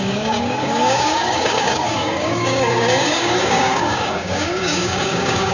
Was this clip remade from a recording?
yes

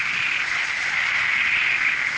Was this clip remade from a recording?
no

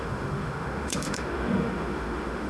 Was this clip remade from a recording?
yes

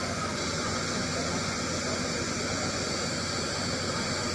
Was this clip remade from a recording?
yes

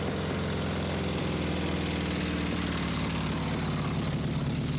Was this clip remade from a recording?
no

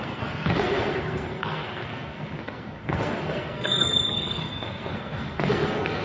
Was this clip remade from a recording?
yes